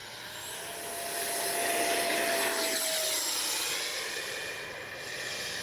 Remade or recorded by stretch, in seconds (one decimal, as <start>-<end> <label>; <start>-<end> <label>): 0.0-3.9 recorded; 3.9-4.9 remade; 4.9-5.6 recorded